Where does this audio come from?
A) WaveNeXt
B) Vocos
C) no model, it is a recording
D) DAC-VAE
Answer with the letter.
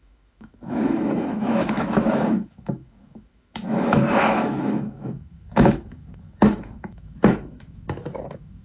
D